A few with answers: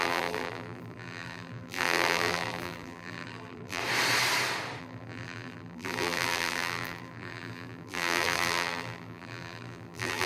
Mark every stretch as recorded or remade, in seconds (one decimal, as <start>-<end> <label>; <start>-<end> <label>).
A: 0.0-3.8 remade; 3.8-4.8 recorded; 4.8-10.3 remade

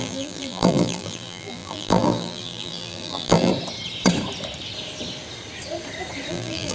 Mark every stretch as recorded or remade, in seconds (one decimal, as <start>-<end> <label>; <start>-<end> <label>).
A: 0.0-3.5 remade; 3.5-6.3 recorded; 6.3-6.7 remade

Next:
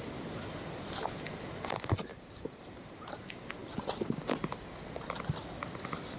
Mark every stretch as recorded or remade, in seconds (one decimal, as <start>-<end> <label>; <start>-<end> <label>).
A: 0.0-2.1 recorded; 2.1-3.1 remade; 3.1-6.2 recorded

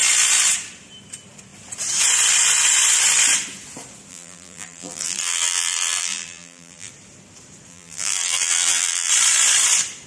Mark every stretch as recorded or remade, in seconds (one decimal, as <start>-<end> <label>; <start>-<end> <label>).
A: 0.0-4.1 recorded; 4.1-6.9 remade; 6.9-7.7 recorded; 7.7-9.1 remade; 9.1-10.1 recorded